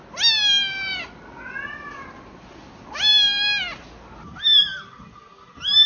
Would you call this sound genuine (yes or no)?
yes